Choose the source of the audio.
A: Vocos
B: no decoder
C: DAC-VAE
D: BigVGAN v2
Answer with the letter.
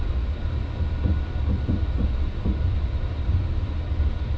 B